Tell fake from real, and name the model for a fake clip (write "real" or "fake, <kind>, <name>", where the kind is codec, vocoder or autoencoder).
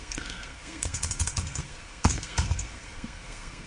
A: fake, codec, SNAC